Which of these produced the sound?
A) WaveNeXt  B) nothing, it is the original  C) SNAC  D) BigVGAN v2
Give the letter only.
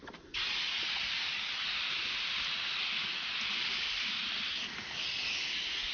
B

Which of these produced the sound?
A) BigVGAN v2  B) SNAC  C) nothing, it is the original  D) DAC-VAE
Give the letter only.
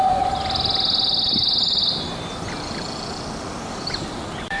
C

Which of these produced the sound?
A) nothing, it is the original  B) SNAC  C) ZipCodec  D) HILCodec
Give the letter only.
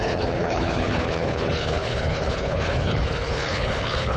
D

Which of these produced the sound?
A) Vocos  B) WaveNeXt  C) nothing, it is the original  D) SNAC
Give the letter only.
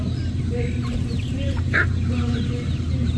C